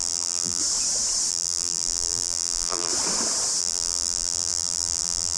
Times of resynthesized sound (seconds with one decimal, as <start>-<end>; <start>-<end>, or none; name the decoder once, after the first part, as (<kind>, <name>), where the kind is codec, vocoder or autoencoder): 0.0-0.6 (vocoder, BigVGAN v2); 1.3-2.9; 3.6-5.4